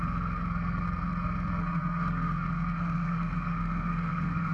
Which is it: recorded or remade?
remade